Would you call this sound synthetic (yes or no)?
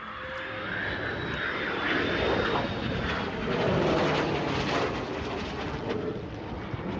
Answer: no